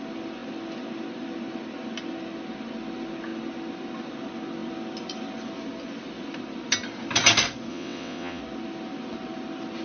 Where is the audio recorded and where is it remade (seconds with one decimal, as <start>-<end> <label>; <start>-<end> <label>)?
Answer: 0.0-7.7 recorded; 7.7-8.4 remade; 8.4-9.8 recorded